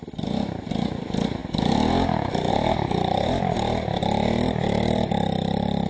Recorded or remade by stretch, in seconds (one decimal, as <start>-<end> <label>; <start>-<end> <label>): 0.0-1.4 remade; 1.4-2.5 recorded; 2.5-5.9 remade